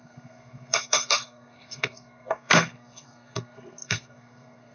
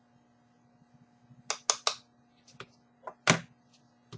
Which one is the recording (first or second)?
second